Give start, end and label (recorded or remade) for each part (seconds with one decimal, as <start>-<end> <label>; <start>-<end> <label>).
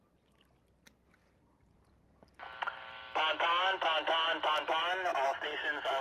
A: 0.0-6.0 recorded